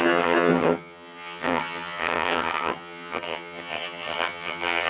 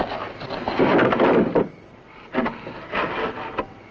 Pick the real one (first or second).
second